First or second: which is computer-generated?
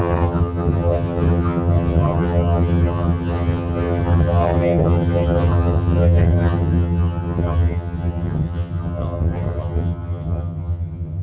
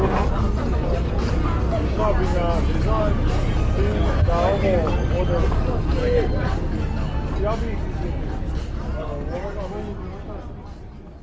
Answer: first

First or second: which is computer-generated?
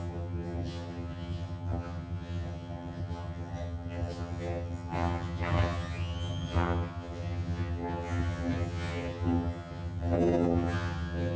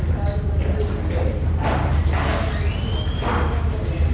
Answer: first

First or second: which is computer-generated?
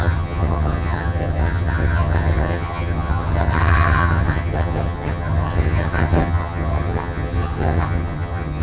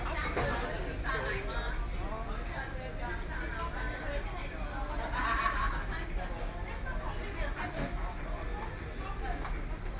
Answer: first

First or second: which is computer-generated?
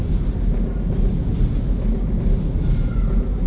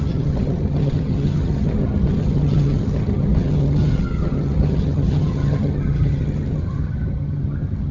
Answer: second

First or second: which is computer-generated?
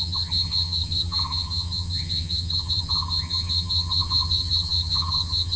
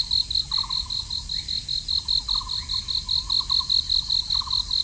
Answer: first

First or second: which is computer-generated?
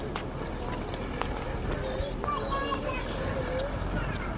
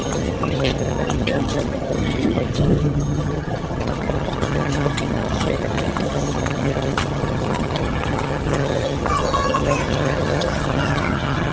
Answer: second